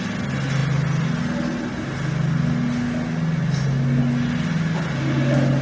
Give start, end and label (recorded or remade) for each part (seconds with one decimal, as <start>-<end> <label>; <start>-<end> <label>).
0.0-5.6 recorded